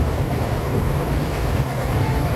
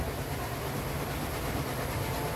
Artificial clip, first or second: first